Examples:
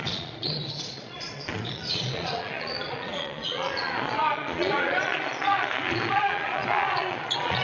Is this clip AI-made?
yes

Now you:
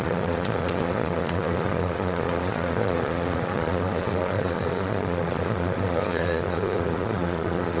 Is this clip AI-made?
yes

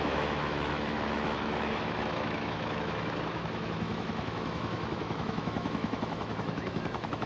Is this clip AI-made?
yes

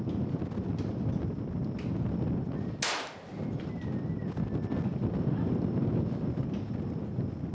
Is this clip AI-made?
no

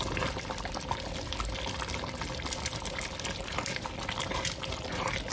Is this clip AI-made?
no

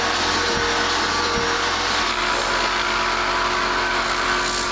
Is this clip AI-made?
no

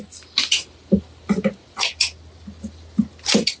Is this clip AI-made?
no